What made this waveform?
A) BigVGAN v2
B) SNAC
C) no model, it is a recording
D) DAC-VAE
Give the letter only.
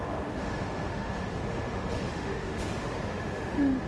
D